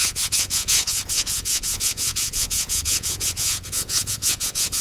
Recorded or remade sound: remade